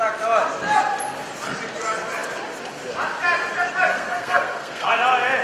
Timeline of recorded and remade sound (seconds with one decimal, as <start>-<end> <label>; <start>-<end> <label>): 0.0-3.9 recorded; 3.9-4.9 remade; 4.9-5.4 recorded